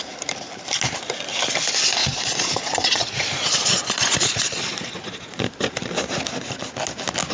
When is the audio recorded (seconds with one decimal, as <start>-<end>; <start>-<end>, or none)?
0.0-2.0; 5.4-7.3